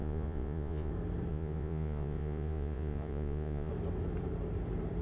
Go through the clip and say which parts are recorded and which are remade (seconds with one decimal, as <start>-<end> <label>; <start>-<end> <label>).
0.0-0.9 remade; 0.9-1.3 recorded; 1.3-3.7 remade; 3.7-5.0 recorded